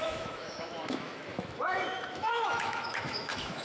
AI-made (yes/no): yes